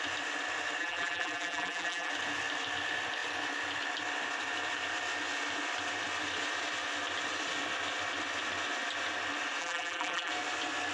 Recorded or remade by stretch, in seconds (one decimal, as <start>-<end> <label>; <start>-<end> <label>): 0.0-0.8 recorded; 0.8-2.1 remade; 2.1-9.6 recorded; 9.6-10.3 remade; 10.3-10.9 recorded